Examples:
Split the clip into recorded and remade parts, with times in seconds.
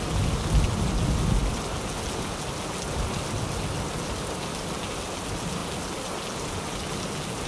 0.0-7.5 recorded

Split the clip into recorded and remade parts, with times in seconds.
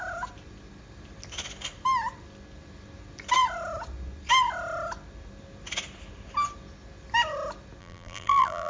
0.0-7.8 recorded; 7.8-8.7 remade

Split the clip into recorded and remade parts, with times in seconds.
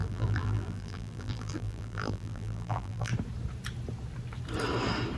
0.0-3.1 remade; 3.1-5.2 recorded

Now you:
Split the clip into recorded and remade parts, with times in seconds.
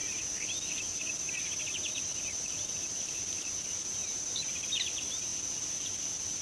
0.0-2.4 recorded; 2.4-4.0 remade; 4.0-4.7 recorded; 4.7-6.4 remade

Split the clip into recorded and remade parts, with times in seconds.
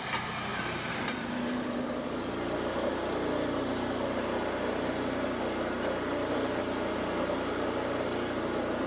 0.0-0.5 recorded; 0.5-2.3 remade; 2.3-8.9 recorded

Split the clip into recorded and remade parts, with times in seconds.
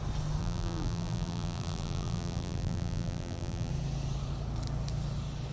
0.0-0.4 recorded; 0.4-3.7 remade; 3.7-5.5 recorded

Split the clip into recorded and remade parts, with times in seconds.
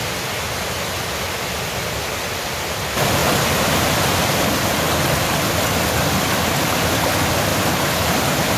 0.0-7.5 recorded; 7.5-8.6 remade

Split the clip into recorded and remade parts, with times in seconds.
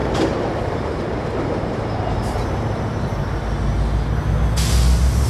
0.0-3.2 remade; 3.2-5.3 recorded